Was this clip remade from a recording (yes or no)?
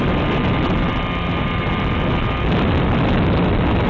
no